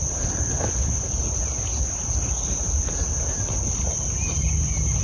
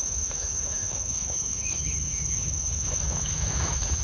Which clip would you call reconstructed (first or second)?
second